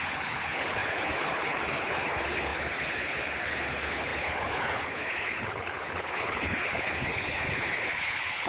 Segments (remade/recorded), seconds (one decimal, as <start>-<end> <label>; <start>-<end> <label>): 0.0-8.5 remade

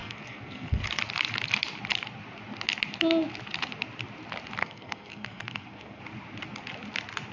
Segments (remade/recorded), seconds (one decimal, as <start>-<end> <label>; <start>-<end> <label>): 0.0-0.8 remade; 0.8-4.6 recorded; 4.6-6.0 remade; 6.0-7.3 recorded

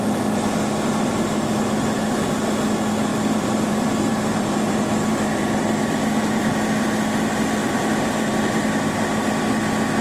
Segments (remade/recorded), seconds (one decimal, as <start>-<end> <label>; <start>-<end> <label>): 0.0-3.1 recorded; 3.1-5.6 remade; 5.6-7.6 recorded; 7.6-8.4 remade; 8.4-10.0 recorded

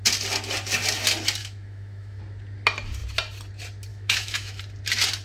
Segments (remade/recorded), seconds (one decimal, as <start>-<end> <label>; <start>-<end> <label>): 0.0-1.4 recorded; 1.4-2.2 remade; 2.2-3.9 recorded; 3.9-4.6 remade; 4.6-5.2 recorded

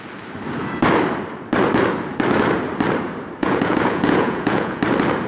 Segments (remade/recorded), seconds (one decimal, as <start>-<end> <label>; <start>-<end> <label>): 0.0-3.4 recorded; 3.4-4.8 remade; 4.8-5.3 recorded

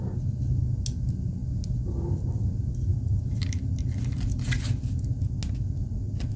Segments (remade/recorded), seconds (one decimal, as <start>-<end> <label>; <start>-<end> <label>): 0.0-2.9 recorded; 2.9-3.7 remade; 3.7-6.4 recorded

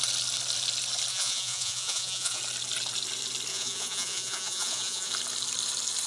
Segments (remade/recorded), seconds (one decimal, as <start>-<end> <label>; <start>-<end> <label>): 0.0-1.1 recorded; 1.1-2.4 remade; 2.4-3.5 recorded; 3.5-5.1 remade; 5.1-6.1 recorded

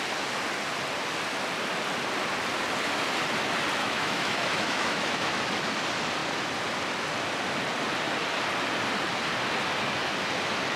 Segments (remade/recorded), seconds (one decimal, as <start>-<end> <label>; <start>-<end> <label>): 0.0-3.8 recorded; 3.8-5.4 remade; 5.4-10.8 recorded